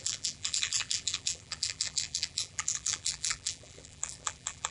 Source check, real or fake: fake